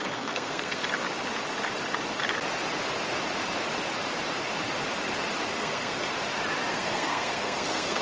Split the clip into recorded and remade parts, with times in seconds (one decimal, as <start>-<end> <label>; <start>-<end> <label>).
0.0-0.8 remade; 0.8-5.5 recorded; 5.5-6.1 remade; 6.1-6.7 recorded; 6.7-8.0 remade